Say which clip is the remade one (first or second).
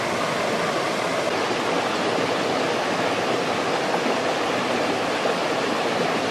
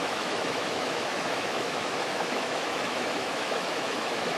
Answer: second